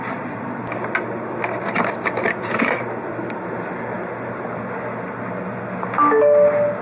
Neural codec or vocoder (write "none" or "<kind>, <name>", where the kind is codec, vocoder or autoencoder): none